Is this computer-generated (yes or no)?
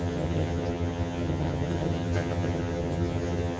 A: yes